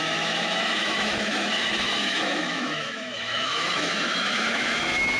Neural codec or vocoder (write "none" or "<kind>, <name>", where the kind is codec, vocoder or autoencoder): autoencoder, DAC-VAE